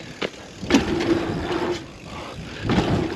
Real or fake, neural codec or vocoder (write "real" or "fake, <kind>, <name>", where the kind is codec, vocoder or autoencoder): real